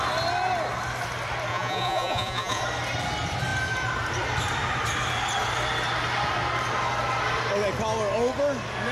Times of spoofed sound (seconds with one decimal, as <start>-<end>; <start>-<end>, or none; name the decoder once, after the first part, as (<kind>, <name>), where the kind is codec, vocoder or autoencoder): 1.5-2.6 (vocoder, Vocos)